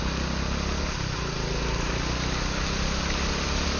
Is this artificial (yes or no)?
no